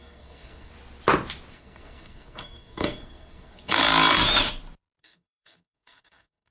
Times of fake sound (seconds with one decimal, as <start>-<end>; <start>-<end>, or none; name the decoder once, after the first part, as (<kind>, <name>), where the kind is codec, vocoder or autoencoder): 0.0-0.7 (codec, SNAC); 1.5-3.8; 5.0-6.5